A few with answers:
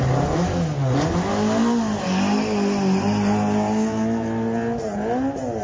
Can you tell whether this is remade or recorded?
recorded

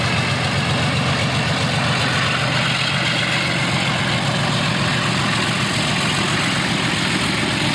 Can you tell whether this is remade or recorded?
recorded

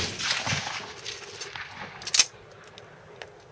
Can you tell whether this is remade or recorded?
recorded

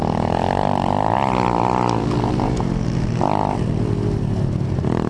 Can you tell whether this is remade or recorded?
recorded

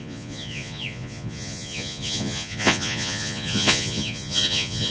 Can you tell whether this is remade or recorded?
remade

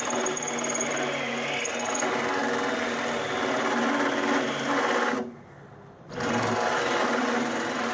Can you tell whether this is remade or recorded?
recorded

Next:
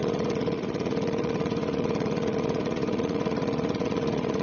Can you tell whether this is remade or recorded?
remade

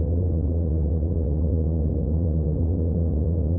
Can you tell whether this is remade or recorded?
remade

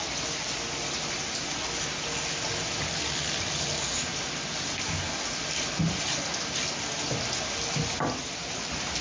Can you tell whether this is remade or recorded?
recorded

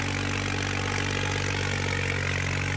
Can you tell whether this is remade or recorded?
recorded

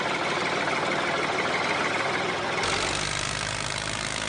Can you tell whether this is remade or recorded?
recorded